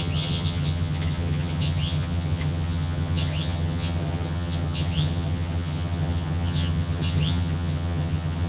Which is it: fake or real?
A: fake